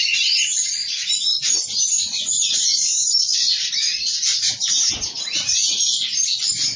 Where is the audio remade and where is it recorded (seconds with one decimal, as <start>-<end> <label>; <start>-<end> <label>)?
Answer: 0.0-4.4 remade; 4.4-5.8 recorded; 5.8-6.8 remade